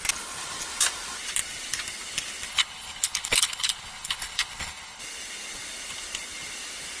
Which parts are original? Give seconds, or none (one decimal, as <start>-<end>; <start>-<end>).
0.0-2.5; 5.0-7.0